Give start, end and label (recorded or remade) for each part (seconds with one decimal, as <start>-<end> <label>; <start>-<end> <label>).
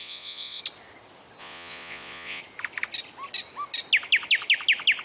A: 0.0-0.6 remade; 0.6-1.4 recorded; 1.4-2.4 remade; 2.4-5.0 recorded